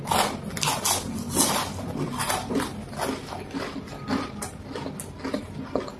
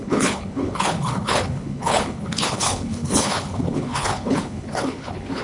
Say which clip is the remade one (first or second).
second